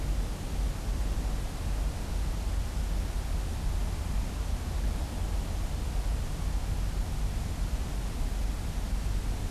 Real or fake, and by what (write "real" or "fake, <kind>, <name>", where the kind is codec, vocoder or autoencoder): real